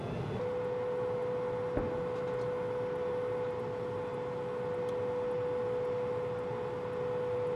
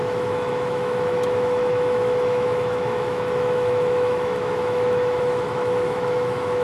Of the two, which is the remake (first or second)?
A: second